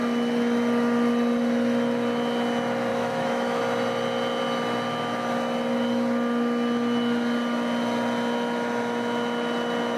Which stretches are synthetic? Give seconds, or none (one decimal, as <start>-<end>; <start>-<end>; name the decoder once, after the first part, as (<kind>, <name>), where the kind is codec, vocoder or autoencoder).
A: 2.9-3.6 (autoencoder, DAC-VAE)